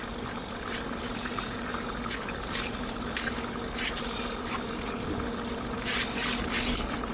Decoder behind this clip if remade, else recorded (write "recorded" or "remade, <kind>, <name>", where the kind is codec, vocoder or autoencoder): recorded